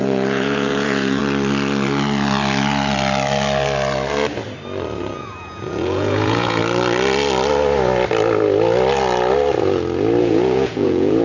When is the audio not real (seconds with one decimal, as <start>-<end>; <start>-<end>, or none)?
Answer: 0.0-1.2; 5.0-6.6; 10.2-11.2